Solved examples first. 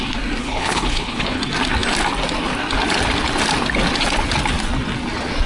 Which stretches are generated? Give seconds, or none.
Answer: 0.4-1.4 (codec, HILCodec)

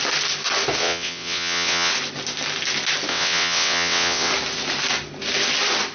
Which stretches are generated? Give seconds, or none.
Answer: 0.8-1.9 (vocoder, WaveNeXt); 3.1-4.3

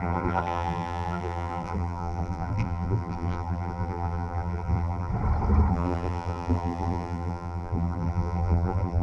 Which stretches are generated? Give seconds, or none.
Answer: 0.0-5.1 (vocoder, BigVGAN v2); 5.7-9.0